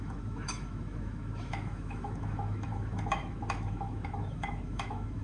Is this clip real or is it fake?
fake